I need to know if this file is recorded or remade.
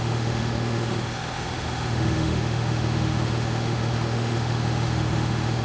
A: remade